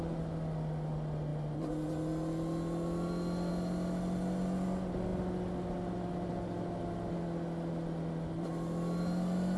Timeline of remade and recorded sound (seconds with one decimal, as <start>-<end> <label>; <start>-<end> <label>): 0.0-9.6 recorded